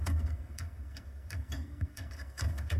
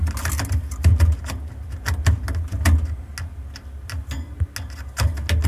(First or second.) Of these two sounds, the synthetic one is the first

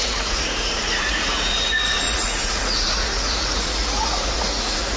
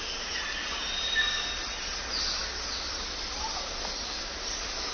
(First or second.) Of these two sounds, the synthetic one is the first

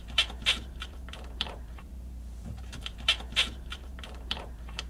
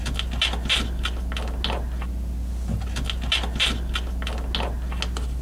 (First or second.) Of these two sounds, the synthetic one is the first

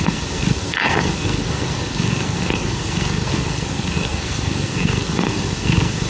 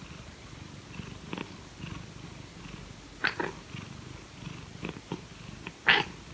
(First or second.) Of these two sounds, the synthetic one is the first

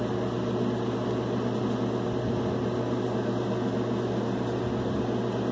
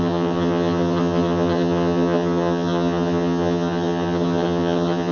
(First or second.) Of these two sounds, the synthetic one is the second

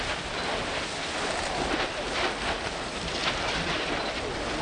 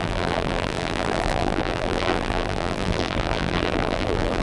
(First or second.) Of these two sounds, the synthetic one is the second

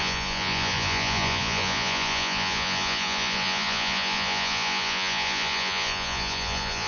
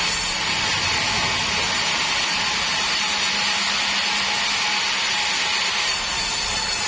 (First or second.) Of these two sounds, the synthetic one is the first